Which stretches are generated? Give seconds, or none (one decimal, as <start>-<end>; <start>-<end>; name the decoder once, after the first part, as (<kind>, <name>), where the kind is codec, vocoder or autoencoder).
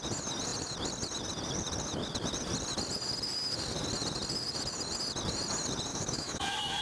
5.9-6.8 (autoencoder, DAC-VAE)